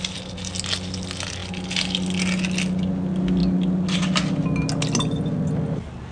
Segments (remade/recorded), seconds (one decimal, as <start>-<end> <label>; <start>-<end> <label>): 0.0-6.1 recorded